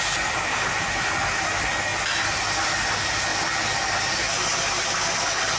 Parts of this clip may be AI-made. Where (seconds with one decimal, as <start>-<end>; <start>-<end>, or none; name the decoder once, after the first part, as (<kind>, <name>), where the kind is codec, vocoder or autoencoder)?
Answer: none

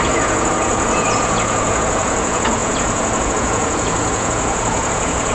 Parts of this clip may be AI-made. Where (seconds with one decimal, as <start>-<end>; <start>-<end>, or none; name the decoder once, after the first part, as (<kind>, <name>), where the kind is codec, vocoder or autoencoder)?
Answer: 0.0-5.3 (vocoder, Vocos)

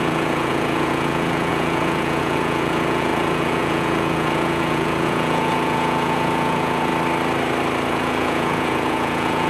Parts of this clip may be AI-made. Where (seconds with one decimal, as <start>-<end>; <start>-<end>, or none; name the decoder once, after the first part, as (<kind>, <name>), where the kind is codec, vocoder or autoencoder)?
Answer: 0.0-6.9 (vocoder, Vocos); 7.9-9.5